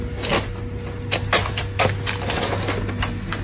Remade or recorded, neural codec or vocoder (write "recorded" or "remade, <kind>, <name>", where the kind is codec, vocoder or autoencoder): recorded